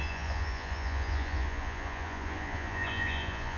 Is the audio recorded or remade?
remade